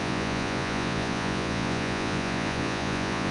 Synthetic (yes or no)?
yes